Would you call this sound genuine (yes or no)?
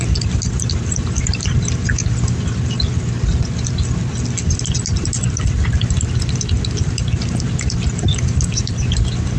yes